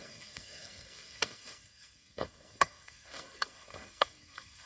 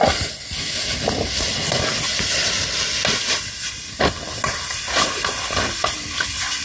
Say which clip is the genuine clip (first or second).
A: second